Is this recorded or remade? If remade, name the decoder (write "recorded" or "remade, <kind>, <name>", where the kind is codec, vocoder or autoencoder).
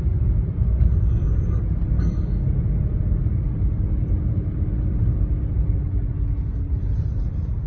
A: recorded